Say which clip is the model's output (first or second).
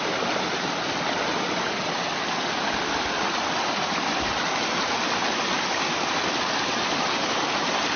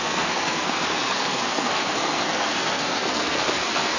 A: second